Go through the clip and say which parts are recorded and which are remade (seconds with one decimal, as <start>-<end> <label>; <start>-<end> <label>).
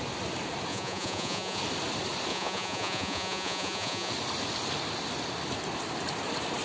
0.0-0.7 recorded; 0.7-1.6 remade; 1.6-2.3 recorded; 2.3-4.1 remade; 4.1-6.6 recorded